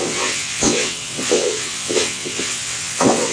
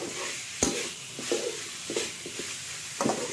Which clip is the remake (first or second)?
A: first